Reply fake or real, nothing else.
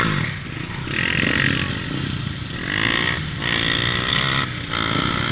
real